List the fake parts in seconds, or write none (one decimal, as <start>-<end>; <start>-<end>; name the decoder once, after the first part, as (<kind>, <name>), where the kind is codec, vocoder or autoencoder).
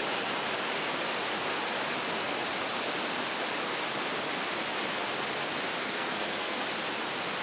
5.8-6.6 (codec, SNAC)